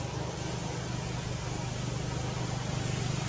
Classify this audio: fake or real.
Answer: real